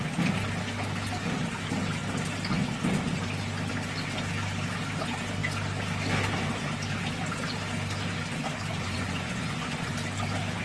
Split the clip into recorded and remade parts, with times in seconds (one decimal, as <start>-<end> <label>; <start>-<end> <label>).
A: 0.0-8.7 recorded; 8.7-9.9 remade; 9.9-10.6 recorded